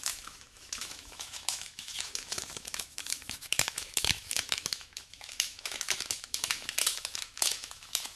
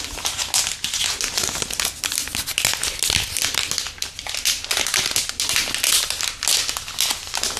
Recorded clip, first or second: second